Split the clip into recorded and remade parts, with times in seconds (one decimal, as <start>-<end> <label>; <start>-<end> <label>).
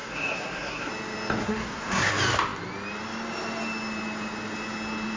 0.0-0.9 remade; 0.9-1.4 recorded; 1.4-2.1 remade; 2.1-5.2 recorded